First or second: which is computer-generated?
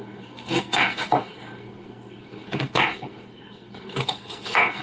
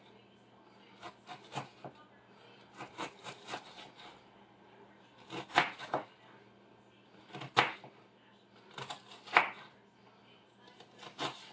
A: first